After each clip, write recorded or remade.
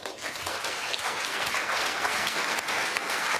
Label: remade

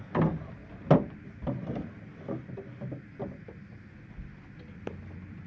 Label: recorded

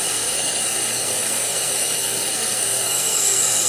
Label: remade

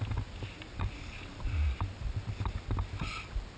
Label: recorded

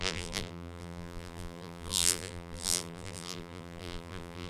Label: remade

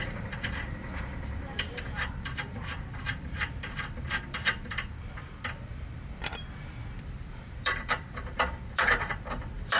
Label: remade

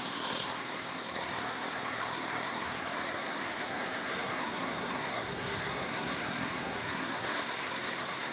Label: remade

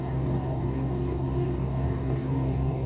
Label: remade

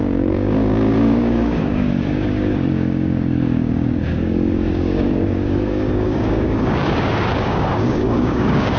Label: remade